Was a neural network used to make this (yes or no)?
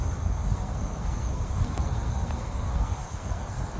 yes